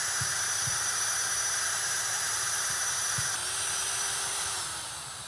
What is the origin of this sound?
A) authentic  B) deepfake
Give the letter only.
B